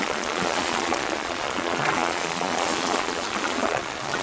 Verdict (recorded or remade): remade